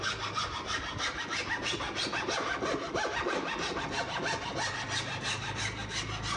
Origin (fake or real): real